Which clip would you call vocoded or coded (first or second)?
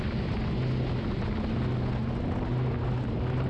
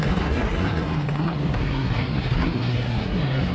second